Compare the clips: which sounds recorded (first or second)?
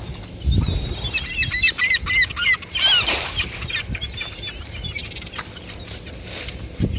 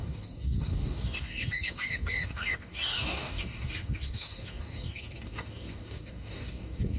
first